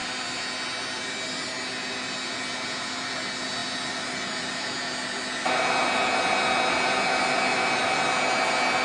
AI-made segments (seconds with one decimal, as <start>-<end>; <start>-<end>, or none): none